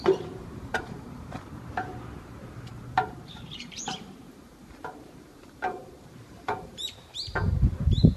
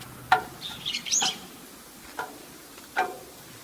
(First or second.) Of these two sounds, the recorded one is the second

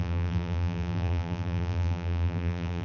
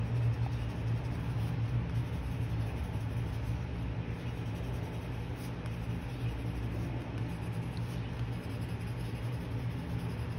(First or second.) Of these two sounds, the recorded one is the second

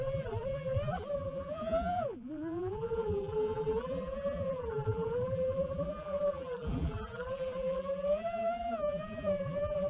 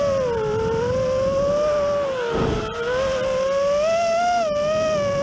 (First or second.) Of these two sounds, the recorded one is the second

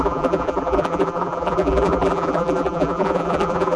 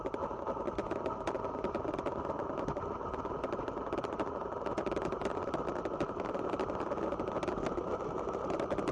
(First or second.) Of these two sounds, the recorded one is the second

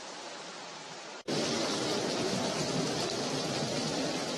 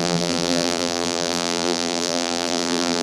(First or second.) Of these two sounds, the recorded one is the first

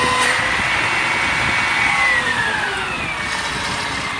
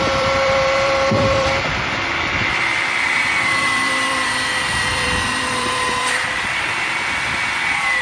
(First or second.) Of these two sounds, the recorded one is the first